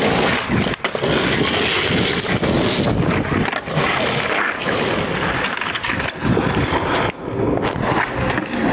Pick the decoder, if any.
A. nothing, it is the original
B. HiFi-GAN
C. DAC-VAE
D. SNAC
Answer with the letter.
A